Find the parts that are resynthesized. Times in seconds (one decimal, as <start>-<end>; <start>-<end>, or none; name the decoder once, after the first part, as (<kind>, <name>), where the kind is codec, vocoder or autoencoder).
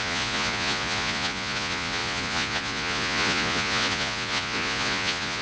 0.0-5.4 (vocoder, Vocos)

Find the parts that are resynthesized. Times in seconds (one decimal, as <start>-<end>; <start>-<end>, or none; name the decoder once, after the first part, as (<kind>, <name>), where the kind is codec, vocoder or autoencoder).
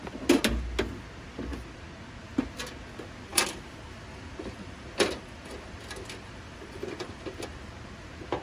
3.3-7.7 (vocoder, BigVGAN v2)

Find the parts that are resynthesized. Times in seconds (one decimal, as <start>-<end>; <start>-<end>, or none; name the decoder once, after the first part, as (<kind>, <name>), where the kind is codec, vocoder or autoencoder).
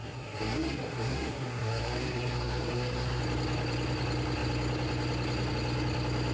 0.0-3.2 (codec, SNAC)